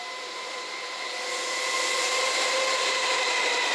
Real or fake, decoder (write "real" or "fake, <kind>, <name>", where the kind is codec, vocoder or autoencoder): real